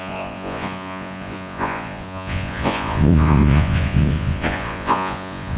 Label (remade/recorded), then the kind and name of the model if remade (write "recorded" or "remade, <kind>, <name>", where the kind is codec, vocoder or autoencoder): remade, vocoder, Vocos